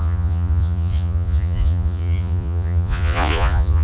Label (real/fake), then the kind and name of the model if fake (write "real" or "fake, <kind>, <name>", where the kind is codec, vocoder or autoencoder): fake, vocoder, Vocos